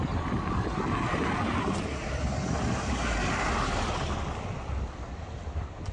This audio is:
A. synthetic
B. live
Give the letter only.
B